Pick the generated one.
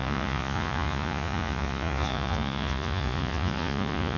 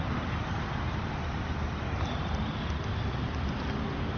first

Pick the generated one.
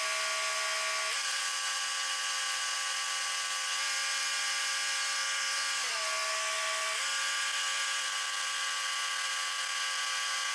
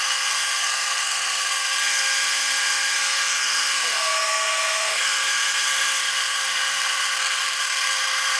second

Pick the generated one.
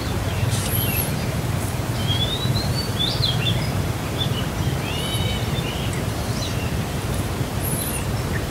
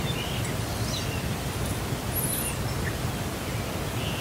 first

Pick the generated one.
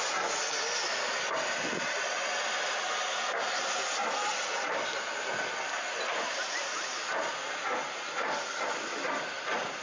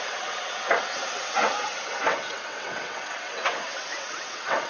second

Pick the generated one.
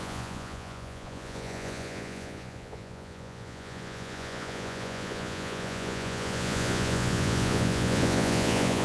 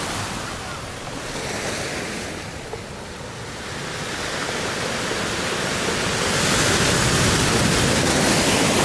first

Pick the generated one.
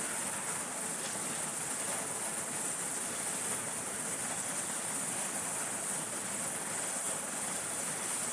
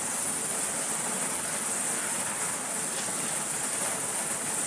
second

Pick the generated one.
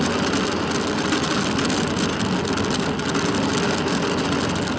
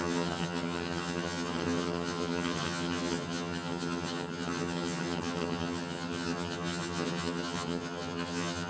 second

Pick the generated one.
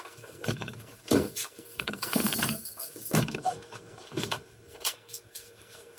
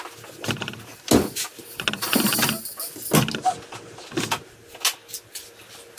first